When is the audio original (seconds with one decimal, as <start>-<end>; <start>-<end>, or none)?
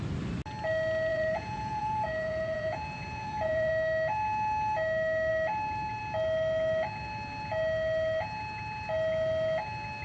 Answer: 0.0-1.1; 3.7-10.0